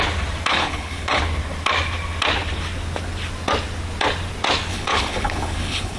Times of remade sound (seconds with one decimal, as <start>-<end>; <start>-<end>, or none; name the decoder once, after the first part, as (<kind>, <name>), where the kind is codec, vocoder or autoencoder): 0.5-1.2 (codec, HILCodec); 4.7-6.0